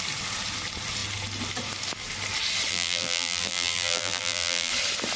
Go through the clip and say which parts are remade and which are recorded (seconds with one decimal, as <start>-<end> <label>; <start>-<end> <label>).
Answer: 0.0-2.7 recorded; 2.7-4.7 remade; 4.7-5.2 recorded